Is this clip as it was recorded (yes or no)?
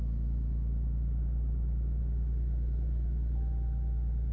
yes